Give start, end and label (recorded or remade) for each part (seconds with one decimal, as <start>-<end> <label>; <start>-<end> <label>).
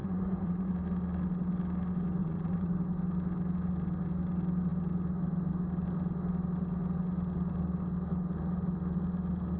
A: 0.0-0.7 remade; 0.7-2.2 recorded; 2.2-2.7 remade; 2.7-9.6 recorded